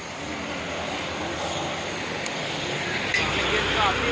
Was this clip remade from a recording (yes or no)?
no